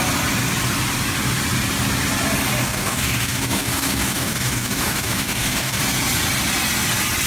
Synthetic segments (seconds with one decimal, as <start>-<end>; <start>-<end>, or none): 2.6-5.8